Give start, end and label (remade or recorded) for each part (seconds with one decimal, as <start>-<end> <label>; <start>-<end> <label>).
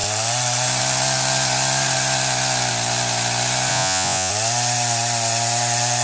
0.0-3.7 recorded; 3.7-4.3 remade; 4.3-6.0 recorded